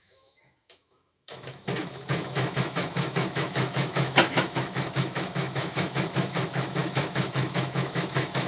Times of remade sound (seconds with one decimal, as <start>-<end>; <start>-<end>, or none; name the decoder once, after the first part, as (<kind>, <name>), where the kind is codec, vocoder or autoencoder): 0.0-8.5 (autoencoder, DAC-VAE)